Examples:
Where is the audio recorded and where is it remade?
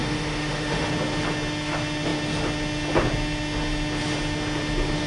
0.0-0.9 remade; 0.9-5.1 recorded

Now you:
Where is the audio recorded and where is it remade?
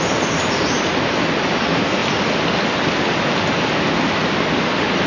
0.0-5.1 recorded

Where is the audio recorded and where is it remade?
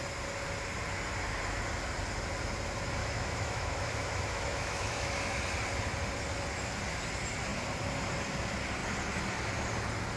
0.0-3.0 recorded; 3.0-5.4 remade; 5.4-10.2 recorded